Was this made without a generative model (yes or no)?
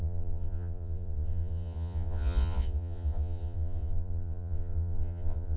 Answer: no